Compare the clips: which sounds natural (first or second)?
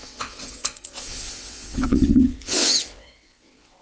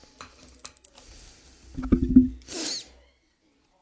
second